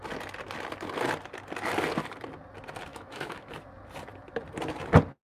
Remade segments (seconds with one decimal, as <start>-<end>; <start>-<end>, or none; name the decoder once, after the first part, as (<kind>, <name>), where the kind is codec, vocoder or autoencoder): 2.9-3.5 (autoencoder, DAC-VAE)